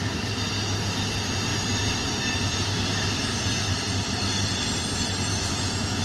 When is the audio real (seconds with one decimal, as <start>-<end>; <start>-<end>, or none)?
0.0-5.3